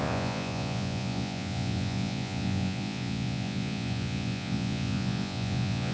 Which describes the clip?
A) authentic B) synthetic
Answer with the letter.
B